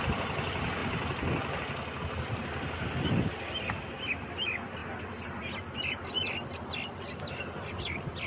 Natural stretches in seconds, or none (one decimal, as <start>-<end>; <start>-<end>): 0.0-8.3